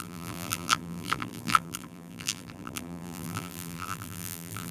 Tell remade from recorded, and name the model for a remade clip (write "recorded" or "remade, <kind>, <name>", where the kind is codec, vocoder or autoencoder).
remade, vocoder, BigVGAN v2